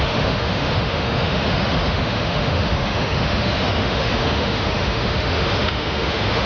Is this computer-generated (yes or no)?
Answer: yes